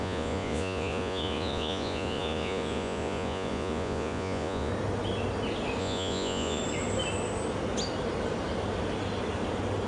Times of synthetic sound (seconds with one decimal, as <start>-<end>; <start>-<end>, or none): 0.0-4.7; 5.8-6.6

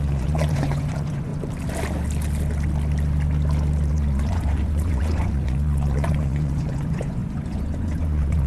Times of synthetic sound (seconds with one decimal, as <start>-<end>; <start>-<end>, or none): 0.0-1.3; 3.9-8.5